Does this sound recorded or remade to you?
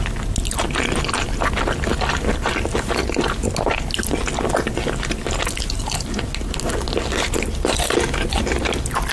recorded